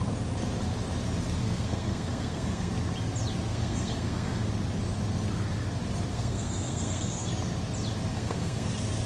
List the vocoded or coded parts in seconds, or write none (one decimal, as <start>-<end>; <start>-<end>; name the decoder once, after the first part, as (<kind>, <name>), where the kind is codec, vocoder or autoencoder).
1.4-2.7 (codec, SNAC); 3.5-4.4; 6.1-7.3; 8.1-8.7